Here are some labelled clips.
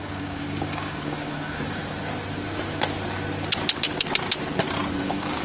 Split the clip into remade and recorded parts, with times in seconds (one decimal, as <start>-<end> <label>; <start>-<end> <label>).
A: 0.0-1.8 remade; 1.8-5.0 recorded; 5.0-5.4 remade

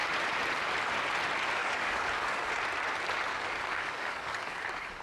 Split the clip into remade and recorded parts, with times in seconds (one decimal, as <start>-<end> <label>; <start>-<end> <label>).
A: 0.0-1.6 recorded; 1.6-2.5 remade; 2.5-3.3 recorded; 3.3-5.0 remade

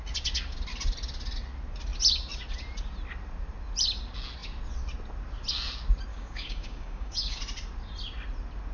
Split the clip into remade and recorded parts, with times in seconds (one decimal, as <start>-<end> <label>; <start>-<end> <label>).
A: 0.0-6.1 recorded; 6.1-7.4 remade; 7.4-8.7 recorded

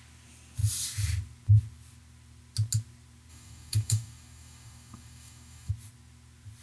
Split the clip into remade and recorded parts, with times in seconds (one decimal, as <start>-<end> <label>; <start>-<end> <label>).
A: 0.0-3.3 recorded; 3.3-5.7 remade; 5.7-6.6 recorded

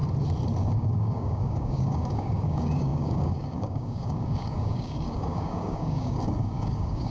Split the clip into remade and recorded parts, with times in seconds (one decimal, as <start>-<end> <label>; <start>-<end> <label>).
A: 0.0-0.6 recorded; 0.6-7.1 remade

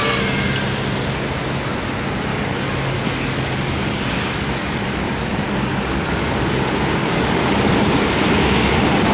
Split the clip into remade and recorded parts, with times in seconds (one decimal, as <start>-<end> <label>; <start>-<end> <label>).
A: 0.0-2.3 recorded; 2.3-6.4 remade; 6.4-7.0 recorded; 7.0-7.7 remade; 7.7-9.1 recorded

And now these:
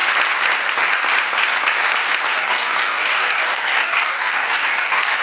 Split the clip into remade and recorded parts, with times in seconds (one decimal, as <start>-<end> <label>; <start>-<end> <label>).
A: 0.0-2.4 recorded; 2.4-5.2 remade